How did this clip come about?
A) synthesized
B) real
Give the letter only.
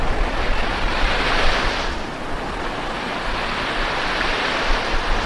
B